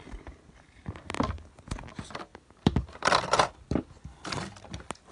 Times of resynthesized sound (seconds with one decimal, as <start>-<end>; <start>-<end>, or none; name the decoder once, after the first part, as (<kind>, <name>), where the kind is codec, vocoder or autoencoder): 2.3-4.5 (vocoder, BigVGAN v2)